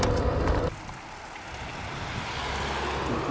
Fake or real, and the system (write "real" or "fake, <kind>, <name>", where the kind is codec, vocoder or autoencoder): real